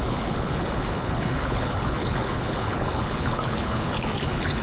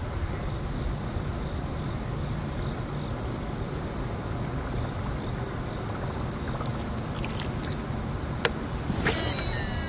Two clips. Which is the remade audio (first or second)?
first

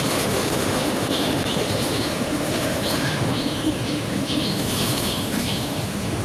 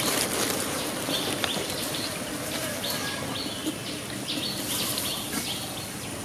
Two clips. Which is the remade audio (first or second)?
first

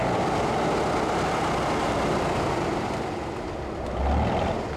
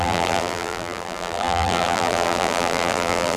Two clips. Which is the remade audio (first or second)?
second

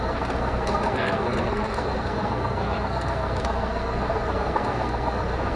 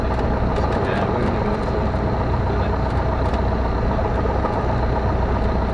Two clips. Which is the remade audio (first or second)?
first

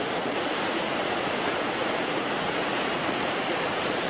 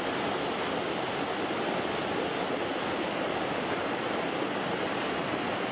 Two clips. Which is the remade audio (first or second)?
first